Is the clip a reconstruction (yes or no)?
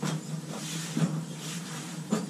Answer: yes